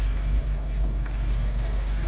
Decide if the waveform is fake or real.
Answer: fake